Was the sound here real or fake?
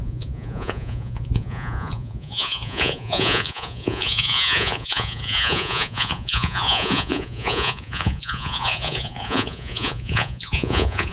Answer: fake